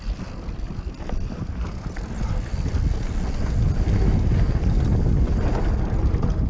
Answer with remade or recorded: recorded